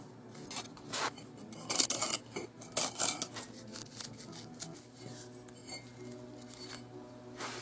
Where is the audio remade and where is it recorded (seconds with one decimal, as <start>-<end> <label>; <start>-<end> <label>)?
0.0-7.6 recorded